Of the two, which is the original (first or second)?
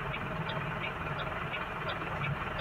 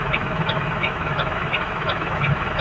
first